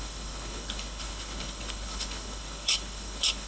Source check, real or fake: fake